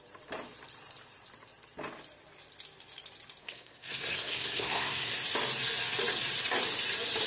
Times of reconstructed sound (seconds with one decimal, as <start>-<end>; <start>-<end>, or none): 3.4-5.1